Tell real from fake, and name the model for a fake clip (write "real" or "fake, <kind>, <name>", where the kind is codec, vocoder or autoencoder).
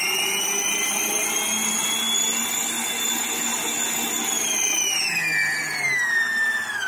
real